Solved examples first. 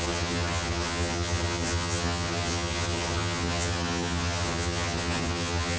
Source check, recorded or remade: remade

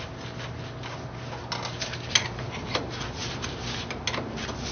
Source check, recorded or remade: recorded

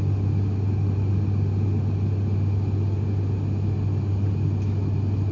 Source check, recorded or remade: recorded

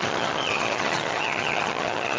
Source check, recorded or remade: remade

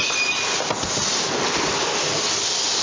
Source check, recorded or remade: recorded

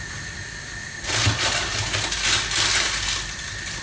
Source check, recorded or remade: recorded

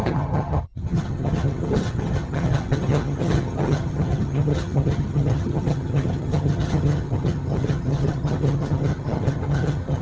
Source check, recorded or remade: remade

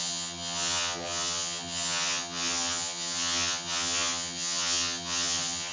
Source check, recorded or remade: remade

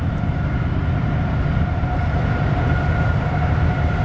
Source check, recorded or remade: recorded